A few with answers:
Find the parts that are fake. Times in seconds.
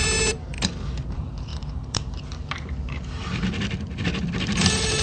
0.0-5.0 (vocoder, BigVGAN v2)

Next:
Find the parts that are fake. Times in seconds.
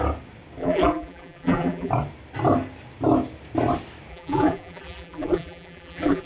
0.6-1.9 (vocoder, BigVGAN v2); 4.1-6.3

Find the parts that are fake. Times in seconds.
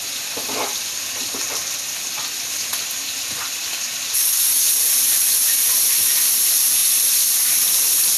0.0-6.8 (vocoder, BigVGAN v2); 7.6-8.2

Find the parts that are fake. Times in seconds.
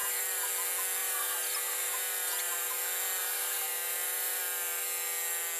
0.0-0.5 (vocoder, BigVGAN v2); 1.0-2.8; 3.2-4.4